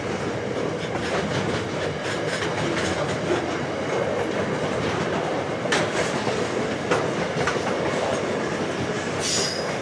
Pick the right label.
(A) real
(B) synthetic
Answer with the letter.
A